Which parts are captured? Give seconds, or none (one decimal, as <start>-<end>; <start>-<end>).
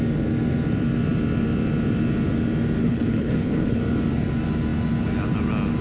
0.0-2.8; 3.8-5.8